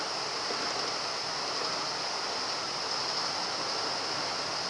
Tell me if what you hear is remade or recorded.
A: recorded